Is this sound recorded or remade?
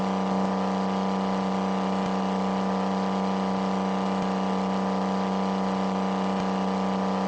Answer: recorded